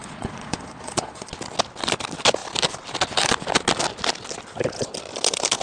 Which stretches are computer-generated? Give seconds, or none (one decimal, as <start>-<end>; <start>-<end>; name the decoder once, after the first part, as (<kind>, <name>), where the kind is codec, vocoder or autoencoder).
0.0-1.3 (vocoder, Vocos)